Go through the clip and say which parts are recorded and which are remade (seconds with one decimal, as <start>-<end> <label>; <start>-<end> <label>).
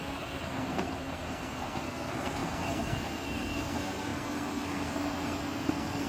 0.0-6.1 remade